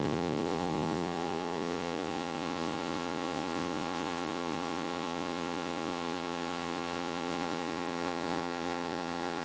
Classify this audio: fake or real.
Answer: fake